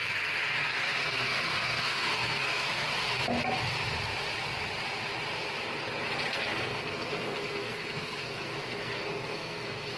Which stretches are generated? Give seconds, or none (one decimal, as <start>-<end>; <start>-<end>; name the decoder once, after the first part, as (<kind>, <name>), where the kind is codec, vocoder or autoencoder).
0.0-3.2 (codec, SNAC); 6.3-10.0